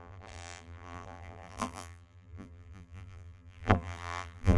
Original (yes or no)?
no